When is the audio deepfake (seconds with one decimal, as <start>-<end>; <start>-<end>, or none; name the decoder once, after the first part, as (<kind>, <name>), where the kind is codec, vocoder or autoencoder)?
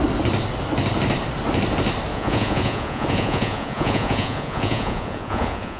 2.1-5.8 (vocoder, Vocos)